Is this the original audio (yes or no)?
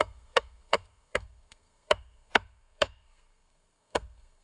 no